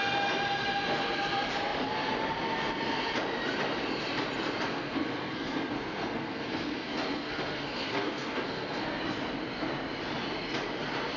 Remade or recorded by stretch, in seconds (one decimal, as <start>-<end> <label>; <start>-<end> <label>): 0.0-4.7 recorded; 4.7-9.0 remade; 9.0-11.2 recorded